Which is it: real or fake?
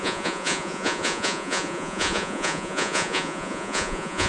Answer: fake